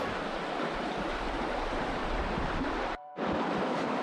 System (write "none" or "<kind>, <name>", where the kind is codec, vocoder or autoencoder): vocoder, BigVGAN v2